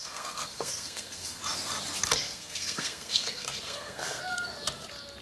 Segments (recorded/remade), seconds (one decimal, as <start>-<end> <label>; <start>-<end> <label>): 0.0-1.4 remade; 1.4-2.2 recorded; 2.2-4.2 remade; 4.2-5.2 recorded